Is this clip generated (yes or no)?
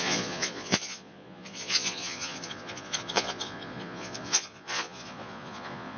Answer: yes